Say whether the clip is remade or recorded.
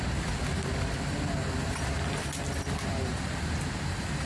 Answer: recorded